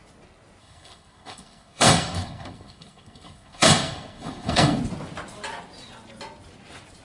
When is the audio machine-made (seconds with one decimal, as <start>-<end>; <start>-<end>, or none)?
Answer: 0.6-4.8